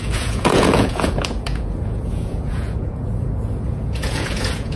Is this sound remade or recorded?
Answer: remade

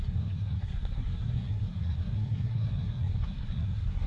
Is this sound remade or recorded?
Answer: remade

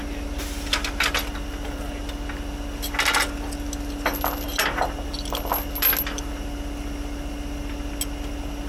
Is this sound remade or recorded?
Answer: recorded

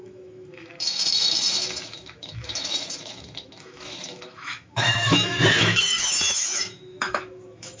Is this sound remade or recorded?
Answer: remade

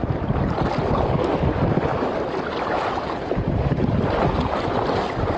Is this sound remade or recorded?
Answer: recorded